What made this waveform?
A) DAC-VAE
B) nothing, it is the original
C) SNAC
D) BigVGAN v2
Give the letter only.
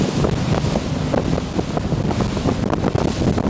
B